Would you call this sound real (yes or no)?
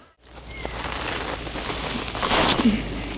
yes